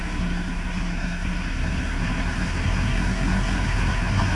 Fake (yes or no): yes